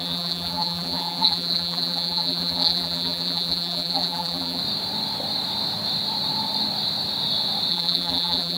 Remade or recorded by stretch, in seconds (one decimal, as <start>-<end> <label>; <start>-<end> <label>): 0.0-4.6 remade; 4.6-7.7 recorded; 7.7-8.6 remade